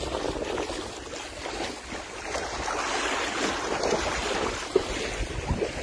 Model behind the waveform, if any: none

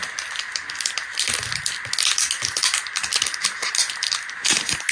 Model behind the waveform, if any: none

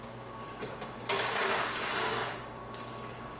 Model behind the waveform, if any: codec, DAC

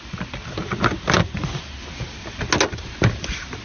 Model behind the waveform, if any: none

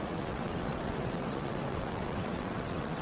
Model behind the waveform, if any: vocoder, WaveNeXt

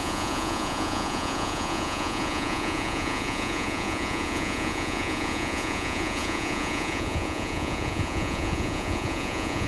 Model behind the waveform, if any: vocoder, Vocos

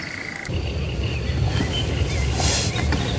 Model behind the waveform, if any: none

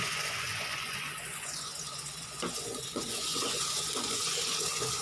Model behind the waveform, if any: vocoder, Vocos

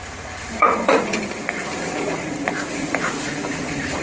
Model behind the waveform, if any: vocoder, Vocos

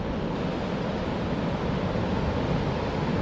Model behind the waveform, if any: none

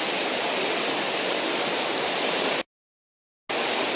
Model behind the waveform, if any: none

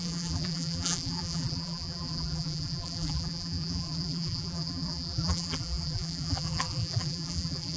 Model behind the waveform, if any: vocoder, BigVGAN v2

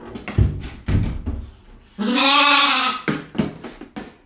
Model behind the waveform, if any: none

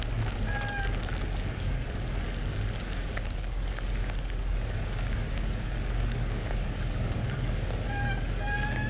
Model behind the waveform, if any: codec, DAC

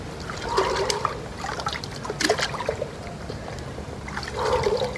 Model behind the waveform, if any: none